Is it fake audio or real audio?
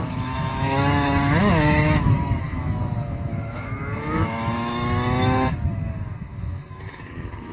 fake